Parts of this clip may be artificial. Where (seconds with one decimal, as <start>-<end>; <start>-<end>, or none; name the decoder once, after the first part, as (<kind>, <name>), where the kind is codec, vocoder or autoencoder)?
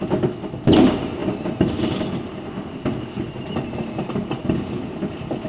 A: none